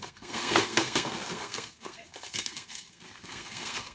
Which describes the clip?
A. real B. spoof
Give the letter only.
B